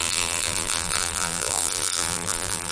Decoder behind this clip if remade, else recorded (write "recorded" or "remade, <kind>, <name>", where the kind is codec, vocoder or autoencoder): remade, vocoder, BigVGAN v2